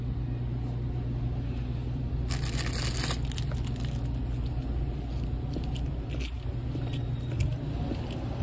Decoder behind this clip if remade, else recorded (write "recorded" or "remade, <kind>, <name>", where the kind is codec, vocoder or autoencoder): recorded